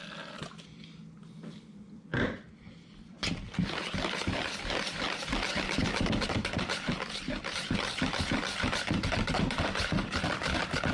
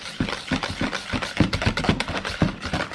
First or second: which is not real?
first